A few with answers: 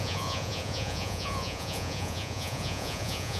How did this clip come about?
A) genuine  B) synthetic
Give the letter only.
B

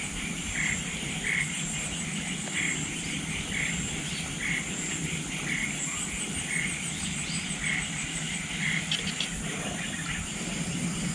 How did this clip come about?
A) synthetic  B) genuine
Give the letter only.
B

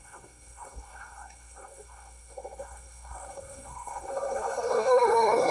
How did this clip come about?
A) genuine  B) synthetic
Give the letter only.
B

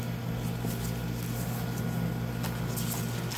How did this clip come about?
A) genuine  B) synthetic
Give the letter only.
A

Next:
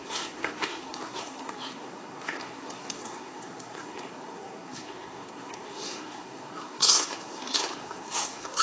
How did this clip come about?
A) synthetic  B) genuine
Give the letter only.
A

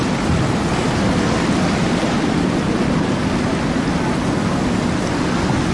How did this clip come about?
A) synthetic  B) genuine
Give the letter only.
B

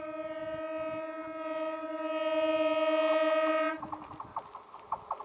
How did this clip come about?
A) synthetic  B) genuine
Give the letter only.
B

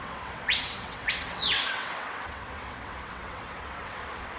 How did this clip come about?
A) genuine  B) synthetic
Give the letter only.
B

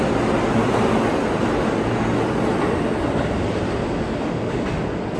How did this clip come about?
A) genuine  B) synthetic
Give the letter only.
A